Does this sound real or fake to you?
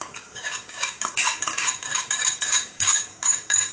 fake